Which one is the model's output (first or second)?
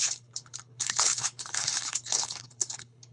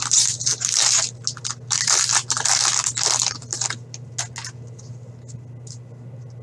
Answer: first